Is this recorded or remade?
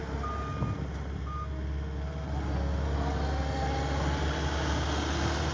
recorded